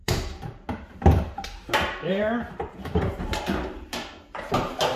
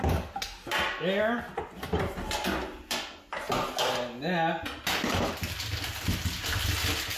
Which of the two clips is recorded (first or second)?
second